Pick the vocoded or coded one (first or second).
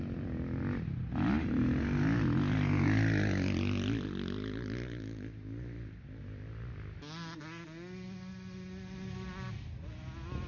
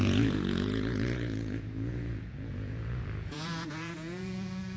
second